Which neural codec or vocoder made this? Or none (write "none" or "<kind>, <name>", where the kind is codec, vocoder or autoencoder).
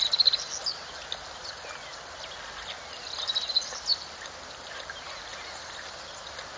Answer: none